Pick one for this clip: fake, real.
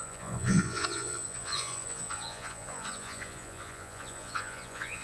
fake